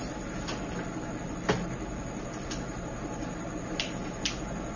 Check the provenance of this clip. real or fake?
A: real